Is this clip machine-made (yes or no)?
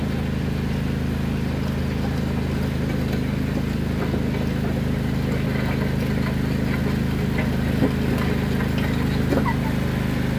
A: no